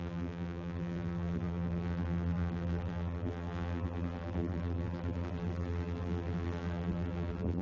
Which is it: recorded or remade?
remade